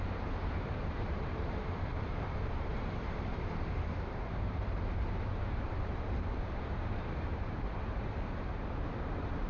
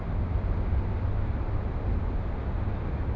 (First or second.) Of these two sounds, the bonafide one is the second